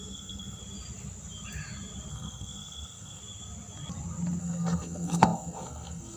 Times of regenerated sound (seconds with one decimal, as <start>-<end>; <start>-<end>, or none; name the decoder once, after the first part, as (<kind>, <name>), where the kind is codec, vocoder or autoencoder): 0.0-0.6 (codec, SNAC); 2.1-3.2; 4.4-6.2